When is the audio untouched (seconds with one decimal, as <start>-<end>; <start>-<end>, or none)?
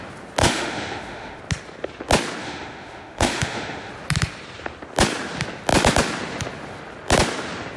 0.0-0.4; 1.4-2.4; 3.9-7.8